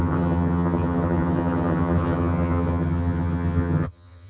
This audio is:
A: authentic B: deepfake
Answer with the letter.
B